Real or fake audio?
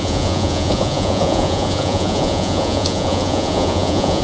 fake